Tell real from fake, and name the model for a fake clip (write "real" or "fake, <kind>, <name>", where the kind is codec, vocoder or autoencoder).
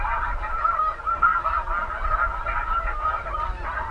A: real